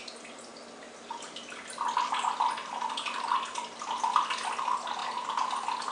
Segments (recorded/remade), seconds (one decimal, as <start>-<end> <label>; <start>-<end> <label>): 0.0-5.9 recorded